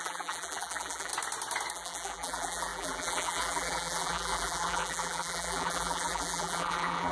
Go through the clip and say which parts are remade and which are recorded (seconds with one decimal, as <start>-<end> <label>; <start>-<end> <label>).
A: 0.0-1.1 remade; 1.1-1.7 recorded; 1.7-7.1 remade